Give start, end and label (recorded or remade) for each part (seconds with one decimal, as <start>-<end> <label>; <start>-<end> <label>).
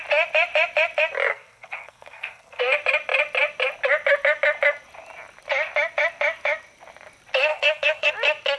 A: 0.0-1.3 recorded; 1.3-2.6 remade; 2.6-7.5 recorded; 7.5-8.1 remade; 8.1-8.6 recorded